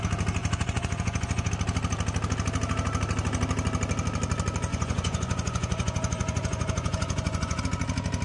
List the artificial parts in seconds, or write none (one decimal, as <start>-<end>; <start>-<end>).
0.4-1.5; 4.7-7.6